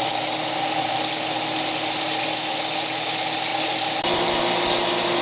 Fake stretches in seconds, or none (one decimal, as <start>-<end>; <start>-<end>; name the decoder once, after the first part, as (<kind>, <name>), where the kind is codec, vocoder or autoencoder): none